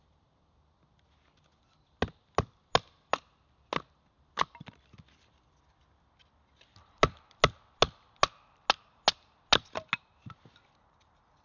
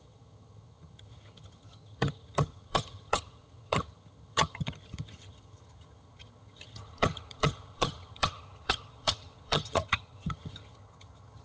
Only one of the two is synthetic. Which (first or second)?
second